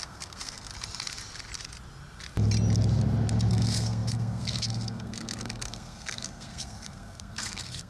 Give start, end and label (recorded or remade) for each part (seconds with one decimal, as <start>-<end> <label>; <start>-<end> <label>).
0.0-0.7 remade; 0.7-3.5 recorded; 3.5-7.9 remade